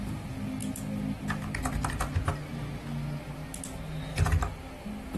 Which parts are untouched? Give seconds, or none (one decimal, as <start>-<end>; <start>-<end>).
0.0-5.2